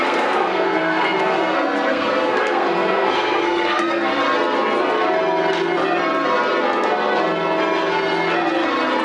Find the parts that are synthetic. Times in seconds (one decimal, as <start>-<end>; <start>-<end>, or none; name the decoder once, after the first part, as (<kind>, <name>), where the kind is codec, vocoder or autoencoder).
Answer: 0.0-4.1 (codec, SNAC)